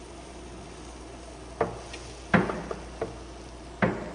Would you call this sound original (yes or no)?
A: yes